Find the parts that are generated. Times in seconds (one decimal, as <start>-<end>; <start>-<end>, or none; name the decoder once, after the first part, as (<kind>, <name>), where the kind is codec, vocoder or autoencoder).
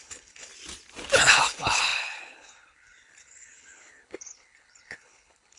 0.0-0.5 (codec, HILCodec); 1.3-5.6